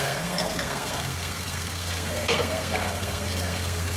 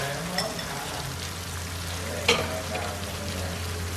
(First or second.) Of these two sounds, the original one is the second